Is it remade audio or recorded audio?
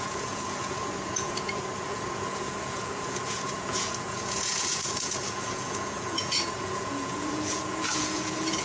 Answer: remade